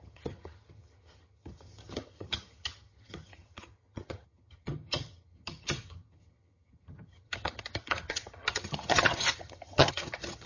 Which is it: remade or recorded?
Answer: remade